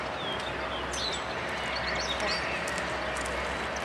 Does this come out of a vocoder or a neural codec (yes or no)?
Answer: no